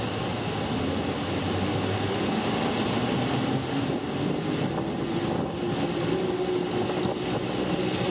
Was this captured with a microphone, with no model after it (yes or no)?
yes